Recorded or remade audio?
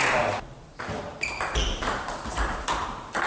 recorded